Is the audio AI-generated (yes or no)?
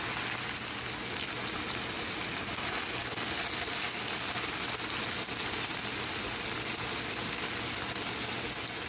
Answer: no